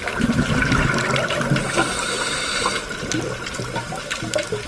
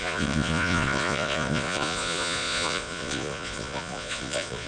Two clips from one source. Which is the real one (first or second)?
first